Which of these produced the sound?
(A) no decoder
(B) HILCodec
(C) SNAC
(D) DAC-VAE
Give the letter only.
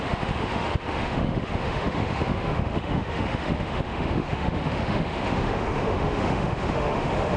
D